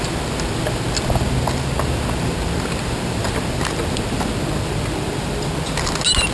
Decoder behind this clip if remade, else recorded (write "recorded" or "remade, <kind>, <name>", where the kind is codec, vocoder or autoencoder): recorded